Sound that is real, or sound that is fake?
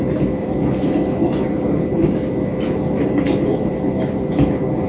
real